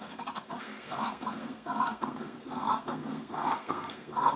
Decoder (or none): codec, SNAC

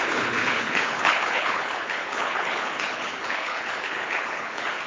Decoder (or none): codec, HILCodec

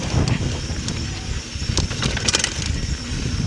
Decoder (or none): none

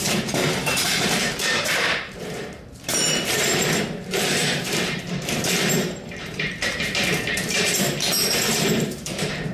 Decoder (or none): vocoder, BigVGAN v2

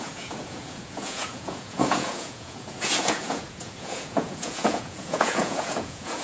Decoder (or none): vocoder, Vocos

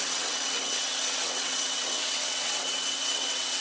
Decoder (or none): vocoder, WaveNeXt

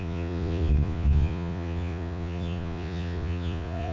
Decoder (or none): vocoder, Vocos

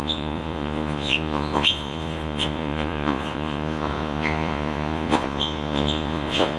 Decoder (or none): vocoder, Vocos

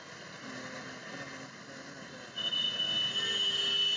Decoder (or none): none